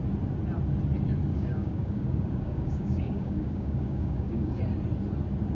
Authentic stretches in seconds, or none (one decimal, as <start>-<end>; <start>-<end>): 0.0-1.3; 4.6-5.5